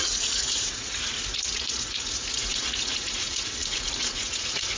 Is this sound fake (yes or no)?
yes